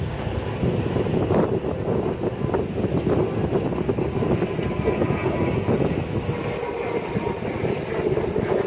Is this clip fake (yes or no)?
yes